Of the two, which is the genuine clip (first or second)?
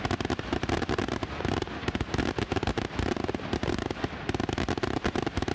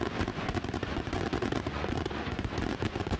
first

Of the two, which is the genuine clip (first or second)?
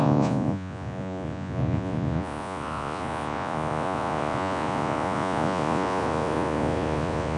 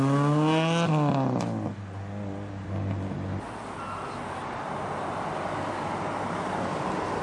second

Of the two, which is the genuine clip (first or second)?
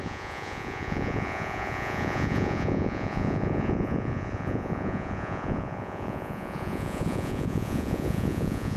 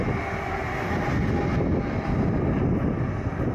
second